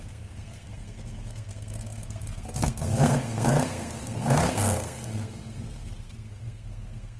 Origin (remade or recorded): remade